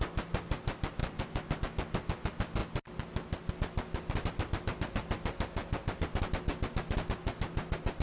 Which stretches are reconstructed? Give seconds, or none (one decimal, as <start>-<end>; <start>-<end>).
1.0-1.6